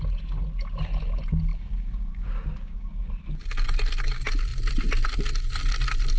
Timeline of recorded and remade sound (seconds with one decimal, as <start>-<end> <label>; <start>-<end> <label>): 0.0-1.5 recorded; 1.5-3.1 remade; 3.1-6.2 recorded